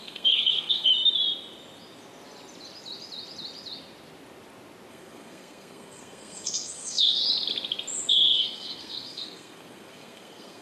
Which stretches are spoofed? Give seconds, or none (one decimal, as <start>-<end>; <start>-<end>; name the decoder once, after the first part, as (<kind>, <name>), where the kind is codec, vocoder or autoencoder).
0.0-0.9 (codec, SNAC); 4.9-7.2; 8.1-10.6